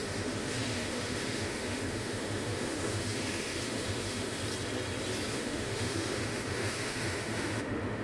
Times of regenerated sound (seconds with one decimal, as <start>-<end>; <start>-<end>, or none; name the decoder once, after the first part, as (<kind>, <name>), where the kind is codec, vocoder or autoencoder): 0.0-4.4 (autoencoder, DAC-VAE); 5.3-8.0